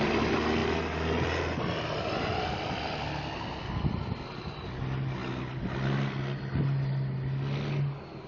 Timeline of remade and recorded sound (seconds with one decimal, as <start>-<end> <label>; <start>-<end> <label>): 0.0-8.3 recorded